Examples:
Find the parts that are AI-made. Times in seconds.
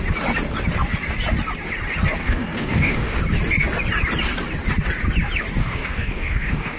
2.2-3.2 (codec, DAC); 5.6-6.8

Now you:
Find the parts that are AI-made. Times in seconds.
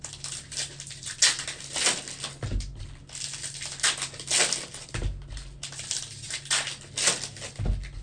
none